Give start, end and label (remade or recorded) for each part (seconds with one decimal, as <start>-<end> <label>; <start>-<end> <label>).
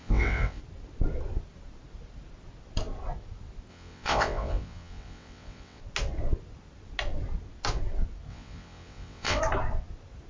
0.0-0.6 remade; 0.6-3.7 recorded; 3.7-5.8 remade; 5.8-8.3 recorded; 8.3-9.4 remade; 9.4-10.3 recorded